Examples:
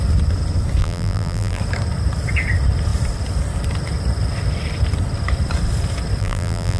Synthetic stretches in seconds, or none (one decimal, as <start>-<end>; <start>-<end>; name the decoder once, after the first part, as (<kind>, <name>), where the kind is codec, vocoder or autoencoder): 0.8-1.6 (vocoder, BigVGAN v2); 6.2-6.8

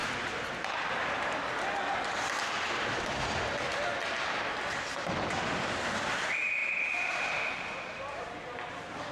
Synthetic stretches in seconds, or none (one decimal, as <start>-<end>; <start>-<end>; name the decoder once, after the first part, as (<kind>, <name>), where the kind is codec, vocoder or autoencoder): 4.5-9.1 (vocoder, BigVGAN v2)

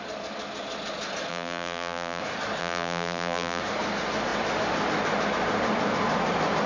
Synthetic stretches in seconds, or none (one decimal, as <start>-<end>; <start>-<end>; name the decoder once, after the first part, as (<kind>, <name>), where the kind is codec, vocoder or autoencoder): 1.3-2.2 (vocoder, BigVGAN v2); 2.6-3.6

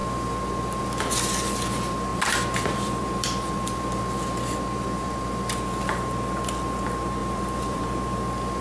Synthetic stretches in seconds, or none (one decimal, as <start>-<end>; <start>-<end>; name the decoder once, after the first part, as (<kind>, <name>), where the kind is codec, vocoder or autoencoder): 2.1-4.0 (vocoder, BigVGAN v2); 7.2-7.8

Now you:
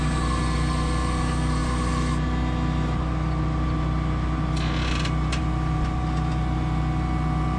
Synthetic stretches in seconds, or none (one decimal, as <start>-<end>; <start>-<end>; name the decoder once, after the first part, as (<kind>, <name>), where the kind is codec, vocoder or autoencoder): none

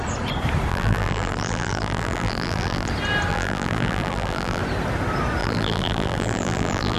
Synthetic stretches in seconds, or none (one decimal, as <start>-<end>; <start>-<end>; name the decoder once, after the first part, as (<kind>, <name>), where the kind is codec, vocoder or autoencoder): 0.7-2.9 (vocoder, BigVGAN v2); 3.3-4.6; 5.4-7.0

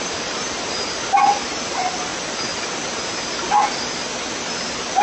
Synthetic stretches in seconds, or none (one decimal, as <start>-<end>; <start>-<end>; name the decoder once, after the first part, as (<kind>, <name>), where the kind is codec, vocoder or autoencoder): none